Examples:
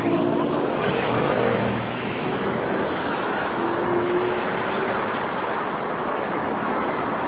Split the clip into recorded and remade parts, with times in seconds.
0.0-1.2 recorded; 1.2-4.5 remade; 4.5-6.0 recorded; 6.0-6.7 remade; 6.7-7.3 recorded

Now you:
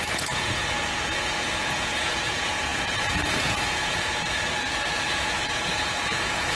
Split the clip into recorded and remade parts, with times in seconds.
0.0-6.5 remade

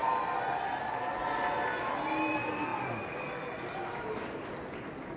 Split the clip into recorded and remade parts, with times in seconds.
0.0-5.2 recorded

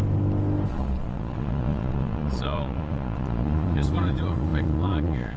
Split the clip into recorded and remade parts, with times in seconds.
0.0-0.7 recorded; 0.7-5.4 remade

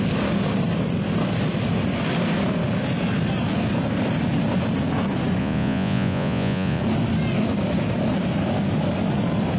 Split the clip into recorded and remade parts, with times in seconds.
0.0-5.4 recorded; 5.4-6.8 remade; 6.8-9.6 recorded

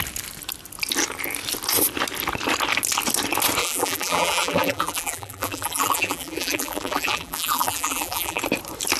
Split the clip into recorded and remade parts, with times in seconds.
0.0-3.6 recorded; 3.6-8.4 remade; 8.4-9.0 recorded